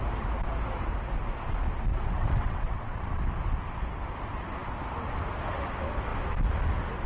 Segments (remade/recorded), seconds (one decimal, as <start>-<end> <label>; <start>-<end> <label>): 0.0-1.9 recorded; 1.9-3.2 remade; 3.2-7.1 recorded